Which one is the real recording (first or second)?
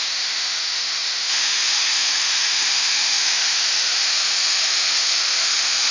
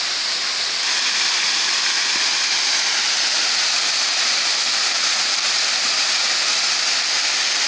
second